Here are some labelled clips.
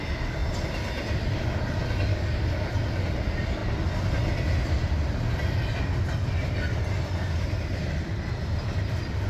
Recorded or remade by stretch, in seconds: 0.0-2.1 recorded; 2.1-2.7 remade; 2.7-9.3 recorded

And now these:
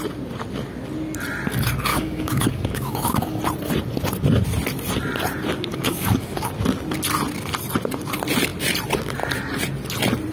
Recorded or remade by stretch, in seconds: 0.0-1.9 recorded; 1.9-3.4 remade; 3.4-5.7 recorded; 5.7-6.5 remade; 6.5-10.3 recorded

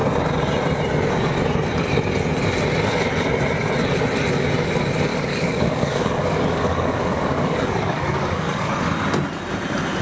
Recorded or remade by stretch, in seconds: 0.0-5.1 recorded; 5.1-8.7 remade; 8.7-10.0 recorded

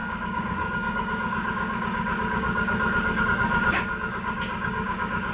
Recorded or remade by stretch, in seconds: 0.0-5.3 remade

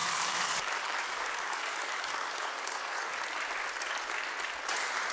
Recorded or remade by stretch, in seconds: 0.0-3.1 remade; 3.1-5.1 recorded